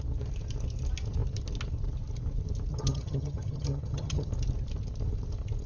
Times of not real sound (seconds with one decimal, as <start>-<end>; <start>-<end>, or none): 2.7-4.3

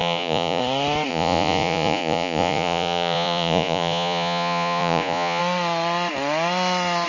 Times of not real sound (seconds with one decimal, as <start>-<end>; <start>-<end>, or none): 0.0-0.6; 1.1-5.4